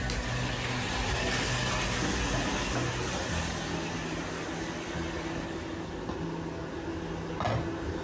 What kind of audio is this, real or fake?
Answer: real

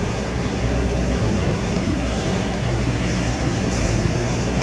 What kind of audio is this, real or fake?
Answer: fake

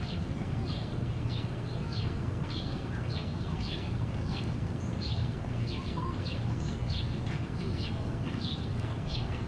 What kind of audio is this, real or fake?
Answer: fake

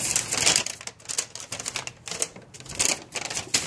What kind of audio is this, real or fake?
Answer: real